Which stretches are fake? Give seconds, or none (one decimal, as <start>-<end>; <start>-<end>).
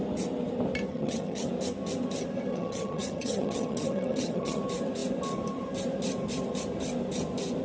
0.9-1.5; 2.5-4.6